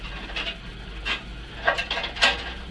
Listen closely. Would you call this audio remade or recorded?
recorded